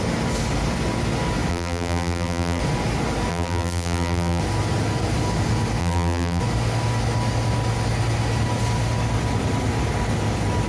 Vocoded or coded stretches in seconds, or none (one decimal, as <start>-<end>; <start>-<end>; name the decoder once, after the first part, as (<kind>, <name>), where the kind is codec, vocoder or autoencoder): 1.5-2.6 (vocoder, BigVGAN v2); 3.3-4.4; 5.8-6.4